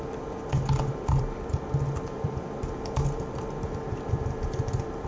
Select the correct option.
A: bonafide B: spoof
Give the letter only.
B